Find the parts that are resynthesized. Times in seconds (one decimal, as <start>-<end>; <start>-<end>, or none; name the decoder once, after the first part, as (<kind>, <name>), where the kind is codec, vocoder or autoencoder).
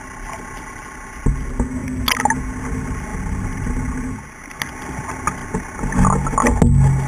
none